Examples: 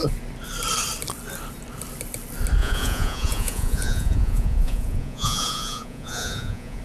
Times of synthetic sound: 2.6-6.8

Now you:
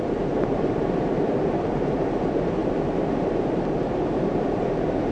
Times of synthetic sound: 0.0-5.1

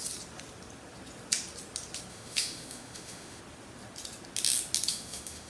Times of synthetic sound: 2.1-3.4; 4.9-5.5

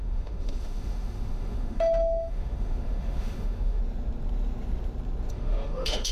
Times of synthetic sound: 0.0-3.8; 5.3-6.1

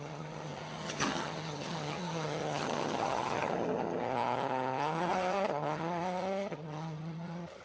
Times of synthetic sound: 0.0-7.6

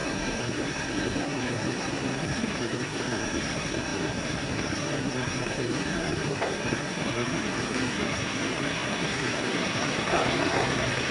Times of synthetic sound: 0.0-11.1

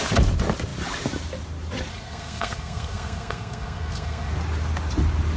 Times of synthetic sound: 1.9-4.3

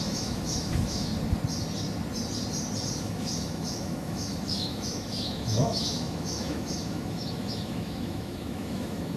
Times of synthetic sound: 0.0-1.1; 3.0-9.2